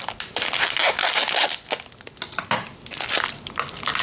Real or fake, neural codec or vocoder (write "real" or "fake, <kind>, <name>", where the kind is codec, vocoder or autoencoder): real